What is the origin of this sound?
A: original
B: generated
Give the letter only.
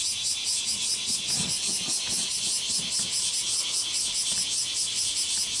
A